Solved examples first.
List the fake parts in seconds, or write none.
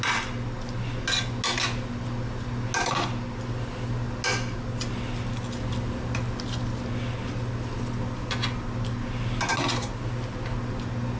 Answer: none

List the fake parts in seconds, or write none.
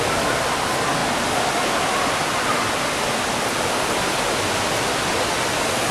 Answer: 1.0-3.4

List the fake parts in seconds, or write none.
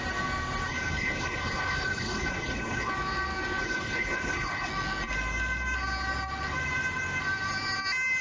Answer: 0.7-2.9; 3.6-4.7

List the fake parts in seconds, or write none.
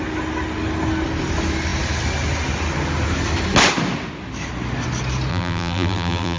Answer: 5.3-6.4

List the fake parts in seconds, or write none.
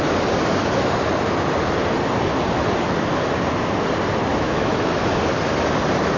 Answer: 4.3-4.9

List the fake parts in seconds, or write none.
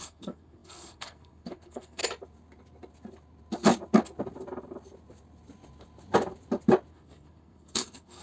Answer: 0.0-2.0; 6.9-8.2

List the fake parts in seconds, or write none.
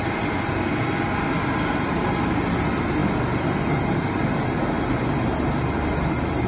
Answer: none